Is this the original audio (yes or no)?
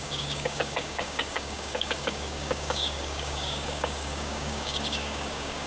no